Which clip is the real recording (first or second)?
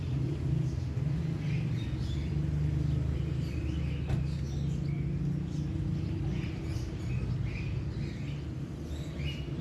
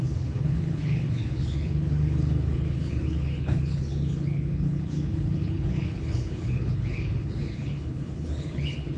first